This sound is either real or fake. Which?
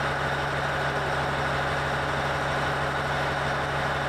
real